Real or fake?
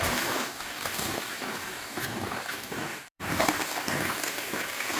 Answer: fake